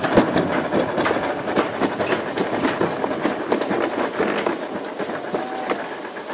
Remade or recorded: recorded